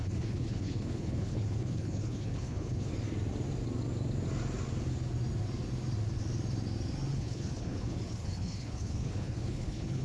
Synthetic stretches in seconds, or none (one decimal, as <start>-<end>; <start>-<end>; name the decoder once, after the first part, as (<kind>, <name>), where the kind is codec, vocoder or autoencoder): 0.0-2.9 (codec, HILCodec); 7.1-10.0